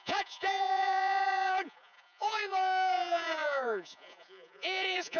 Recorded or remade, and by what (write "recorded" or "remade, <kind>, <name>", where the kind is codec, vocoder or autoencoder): remade, vocoder, Vocos